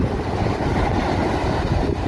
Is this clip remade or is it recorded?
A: recorded